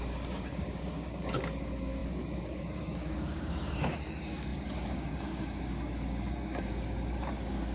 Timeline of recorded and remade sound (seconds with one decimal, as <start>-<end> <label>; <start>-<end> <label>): 0.0-7.7 remade